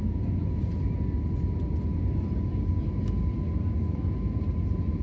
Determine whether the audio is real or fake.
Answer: real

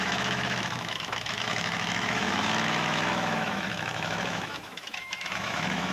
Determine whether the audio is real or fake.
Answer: fake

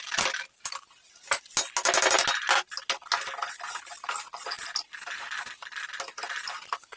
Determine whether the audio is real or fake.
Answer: real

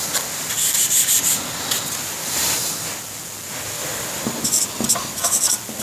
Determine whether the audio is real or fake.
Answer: real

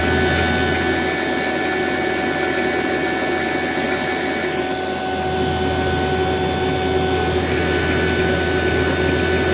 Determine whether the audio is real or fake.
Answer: real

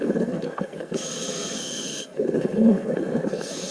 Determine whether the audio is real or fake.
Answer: fake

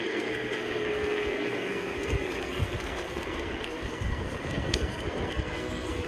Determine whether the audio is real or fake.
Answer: fake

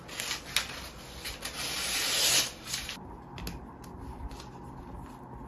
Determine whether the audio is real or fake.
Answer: real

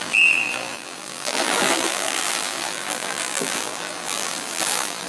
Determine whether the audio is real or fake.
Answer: fake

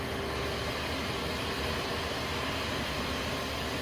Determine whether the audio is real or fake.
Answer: real